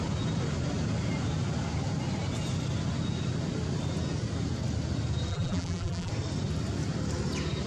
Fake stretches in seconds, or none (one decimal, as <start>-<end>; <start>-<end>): 5.3-6.1

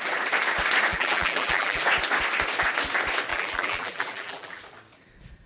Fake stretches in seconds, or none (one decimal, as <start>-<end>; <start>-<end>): 0.9-1.8; 3.3-4.6

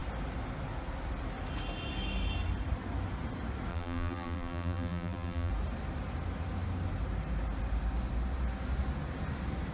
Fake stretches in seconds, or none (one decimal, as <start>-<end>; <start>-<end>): 3.7-5.5

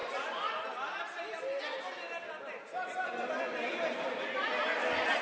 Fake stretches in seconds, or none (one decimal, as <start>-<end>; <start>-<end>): none

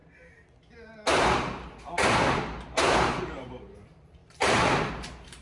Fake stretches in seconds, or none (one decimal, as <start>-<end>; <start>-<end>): 3.2-5.4

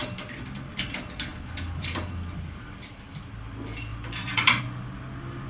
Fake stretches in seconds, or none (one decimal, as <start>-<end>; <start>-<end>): 1.3-3.2; 3.9-4.6

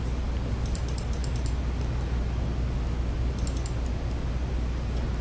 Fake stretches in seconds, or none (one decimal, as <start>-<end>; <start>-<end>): 0.0-1.2; 4.3-5.2

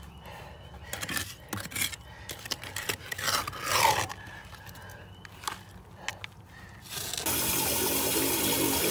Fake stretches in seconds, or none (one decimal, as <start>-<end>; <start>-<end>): none